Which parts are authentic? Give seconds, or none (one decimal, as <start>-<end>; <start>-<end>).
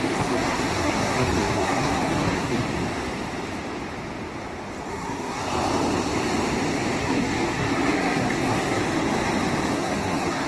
2.6-4.9; 5.4-7.0; 8.8-9.7